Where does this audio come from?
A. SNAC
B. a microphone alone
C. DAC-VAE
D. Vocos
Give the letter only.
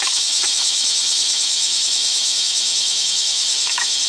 C